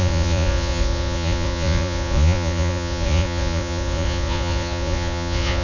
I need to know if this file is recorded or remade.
remade